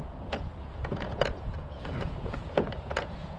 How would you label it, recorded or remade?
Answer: remade